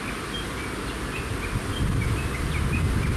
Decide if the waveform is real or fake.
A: real